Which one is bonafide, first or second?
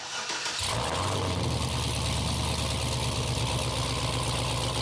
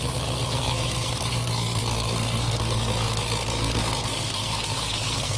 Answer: first